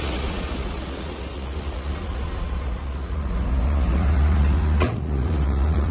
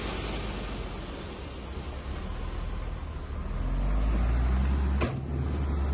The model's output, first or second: first